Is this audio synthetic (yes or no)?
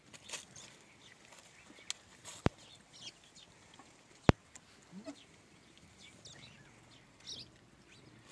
no